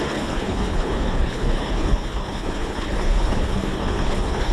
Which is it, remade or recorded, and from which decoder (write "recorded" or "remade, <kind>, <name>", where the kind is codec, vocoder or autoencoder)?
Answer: remade, codec, HILCodec